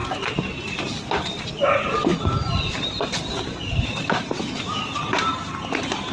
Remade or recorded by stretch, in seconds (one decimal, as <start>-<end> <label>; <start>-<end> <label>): 0.0-6.1 recorded